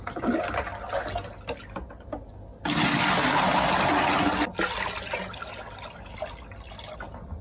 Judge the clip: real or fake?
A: real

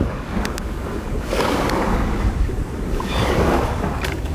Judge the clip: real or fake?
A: fake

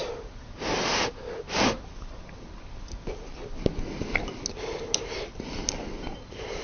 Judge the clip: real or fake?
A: real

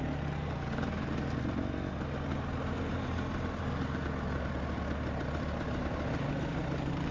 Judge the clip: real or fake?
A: real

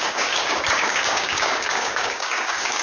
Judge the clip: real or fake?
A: fake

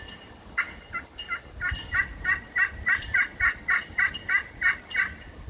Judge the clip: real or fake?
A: real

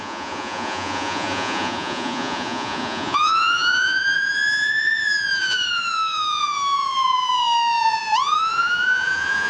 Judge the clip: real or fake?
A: fake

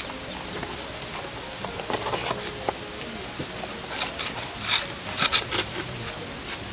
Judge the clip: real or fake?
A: real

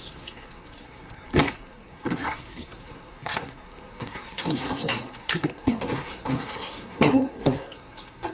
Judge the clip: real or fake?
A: fake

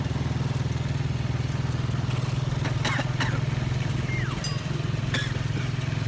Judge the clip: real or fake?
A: real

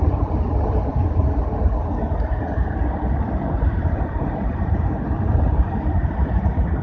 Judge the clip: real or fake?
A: fake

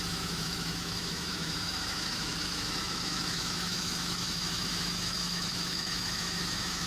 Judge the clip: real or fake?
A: fake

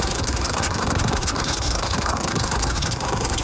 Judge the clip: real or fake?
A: fake